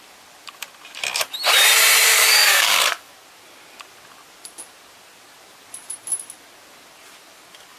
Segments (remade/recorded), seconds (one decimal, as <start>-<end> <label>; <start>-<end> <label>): 0.0-2.1 recorded; 2.1-3.1 remade; 3.1-7.8 recorded